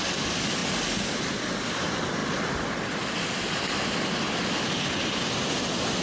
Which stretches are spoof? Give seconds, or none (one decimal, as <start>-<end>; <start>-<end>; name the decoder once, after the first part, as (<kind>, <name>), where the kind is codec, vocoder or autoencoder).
none